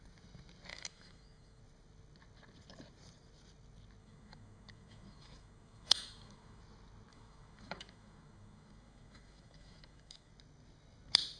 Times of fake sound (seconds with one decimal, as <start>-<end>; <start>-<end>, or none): 0.7-1.6; 4.0-6.6; 7.1-10.3